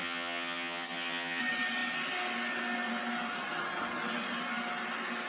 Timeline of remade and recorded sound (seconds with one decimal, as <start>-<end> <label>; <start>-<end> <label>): 0.0-1.4 remade; 1.4-5.3 recorded